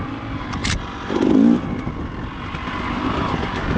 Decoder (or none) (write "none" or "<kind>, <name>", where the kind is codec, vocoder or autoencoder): none